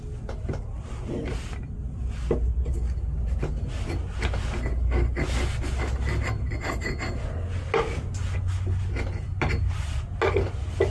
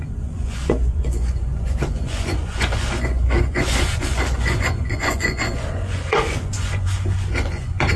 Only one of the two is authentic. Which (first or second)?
first